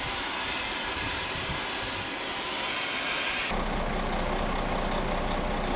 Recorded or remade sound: recorded